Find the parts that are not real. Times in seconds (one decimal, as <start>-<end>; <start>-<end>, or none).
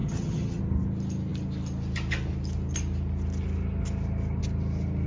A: 0.0-0.6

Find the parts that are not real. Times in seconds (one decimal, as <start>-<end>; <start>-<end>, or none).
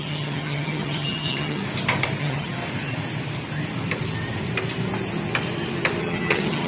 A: 0.0-1.6; 2.2-2.6; 6.0-6.7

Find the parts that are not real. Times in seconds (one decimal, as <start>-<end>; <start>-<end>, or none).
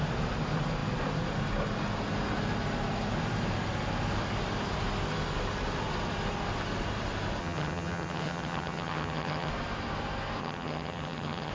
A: 7.4-9.5; 10.4-11.5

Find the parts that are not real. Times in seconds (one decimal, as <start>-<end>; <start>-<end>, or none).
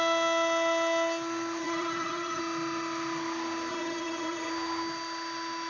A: 1.6-2.4; 3.7-4.5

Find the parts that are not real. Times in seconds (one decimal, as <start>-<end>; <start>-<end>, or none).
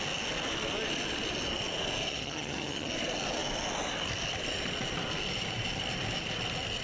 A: 2.1-2.9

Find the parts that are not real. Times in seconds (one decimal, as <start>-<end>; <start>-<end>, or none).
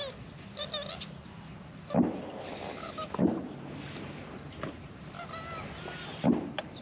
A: none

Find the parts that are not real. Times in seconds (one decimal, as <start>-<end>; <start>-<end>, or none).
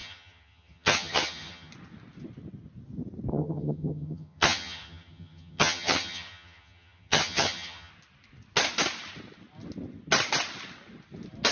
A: 0.0-1.7; 3.3-7.9